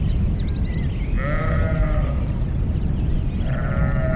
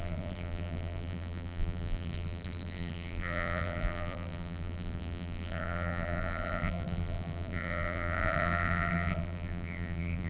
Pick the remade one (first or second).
second